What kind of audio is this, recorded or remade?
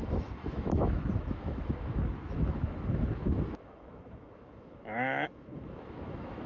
remade